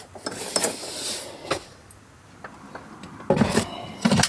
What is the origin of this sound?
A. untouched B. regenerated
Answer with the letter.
A